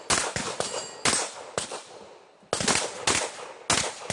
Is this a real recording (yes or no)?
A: yes